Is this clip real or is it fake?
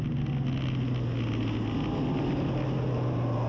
real